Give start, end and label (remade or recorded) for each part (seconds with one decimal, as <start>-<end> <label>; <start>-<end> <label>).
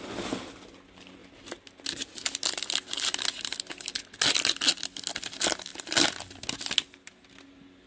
0.0-7.9 recorded